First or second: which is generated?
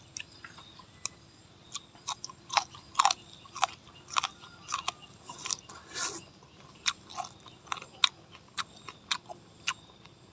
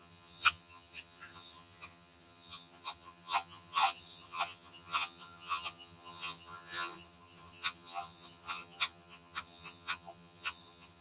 second